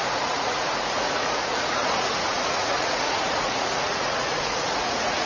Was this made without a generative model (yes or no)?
no